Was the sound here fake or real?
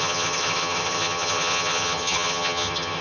fake